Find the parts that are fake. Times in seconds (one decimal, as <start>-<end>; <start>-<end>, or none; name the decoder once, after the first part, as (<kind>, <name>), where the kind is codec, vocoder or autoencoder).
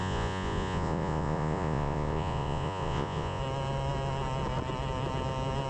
0.0-3.4 (vocoder, Vocos)